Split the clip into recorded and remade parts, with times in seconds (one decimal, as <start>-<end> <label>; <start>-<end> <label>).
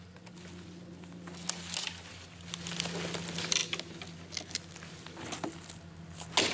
0.0-6.5 recorded